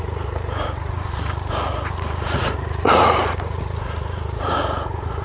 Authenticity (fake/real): fake